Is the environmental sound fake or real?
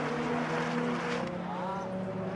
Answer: real